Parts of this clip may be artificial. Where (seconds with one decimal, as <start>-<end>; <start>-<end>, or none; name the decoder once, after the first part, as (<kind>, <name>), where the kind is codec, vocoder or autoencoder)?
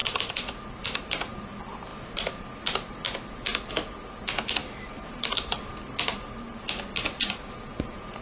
none